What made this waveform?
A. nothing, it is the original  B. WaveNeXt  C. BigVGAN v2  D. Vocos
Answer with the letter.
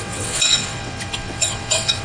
B